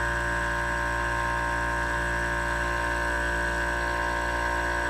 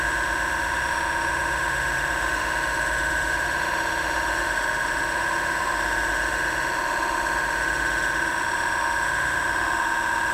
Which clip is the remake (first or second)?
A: second